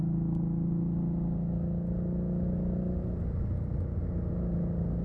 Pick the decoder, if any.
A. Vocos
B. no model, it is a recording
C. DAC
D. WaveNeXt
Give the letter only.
B